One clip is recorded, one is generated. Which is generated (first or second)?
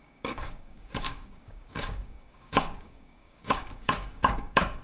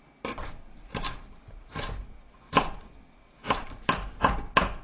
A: first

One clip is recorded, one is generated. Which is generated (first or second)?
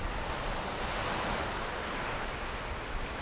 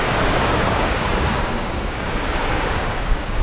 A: second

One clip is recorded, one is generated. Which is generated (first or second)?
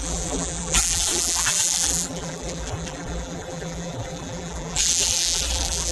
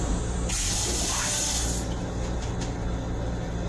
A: first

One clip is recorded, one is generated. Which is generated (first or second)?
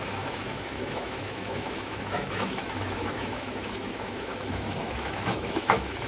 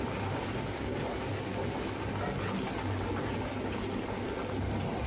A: first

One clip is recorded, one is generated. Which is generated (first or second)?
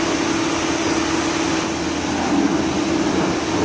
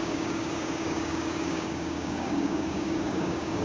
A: second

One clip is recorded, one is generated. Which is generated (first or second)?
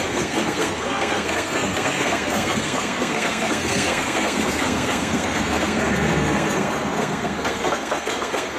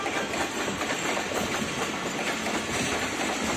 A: first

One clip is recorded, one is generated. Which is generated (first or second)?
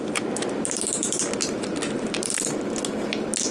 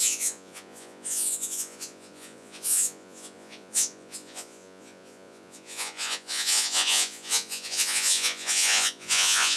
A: second